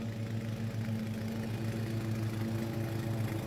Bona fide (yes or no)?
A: yes